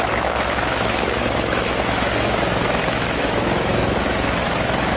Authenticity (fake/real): fake